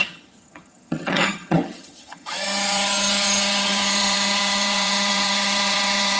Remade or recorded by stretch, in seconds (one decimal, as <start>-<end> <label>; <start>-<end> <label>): 0.0-6.2 remade